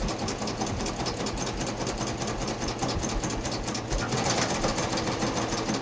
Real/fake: real